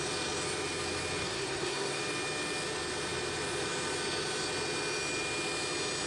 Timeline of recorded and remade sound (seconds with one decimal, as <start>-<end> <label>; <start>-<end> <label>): 0.0-1.2 recorded; 1.2-2.0 remade; 2.0-6.1 recorded